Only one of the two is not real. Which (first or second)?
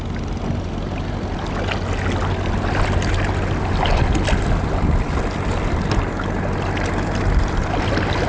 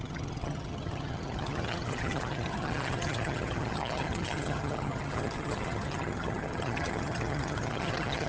second